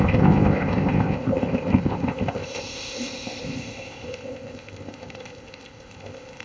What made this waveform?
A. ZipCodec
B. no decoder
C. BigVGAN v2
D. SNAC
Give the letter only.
A